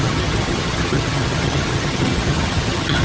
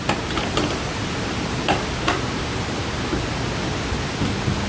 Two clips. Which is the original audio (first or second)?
second